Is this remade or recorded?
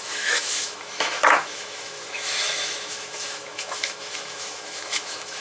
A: remade